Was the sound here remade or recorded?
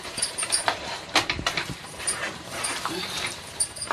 remade